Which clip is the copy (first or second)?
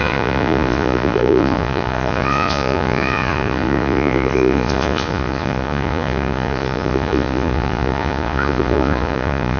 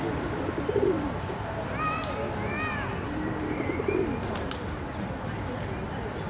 first